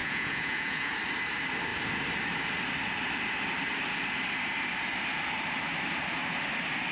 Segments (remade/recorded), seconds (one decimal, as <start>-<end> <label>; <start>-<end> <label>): 0.0-0.9 remade; 0.9-6.9 recorded